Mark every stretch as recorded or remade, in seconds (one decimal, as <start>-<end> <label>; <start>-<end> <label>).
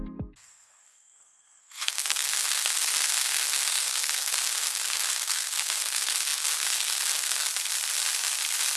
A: 0.0-7.5 remade; 7.5-8.8 recorded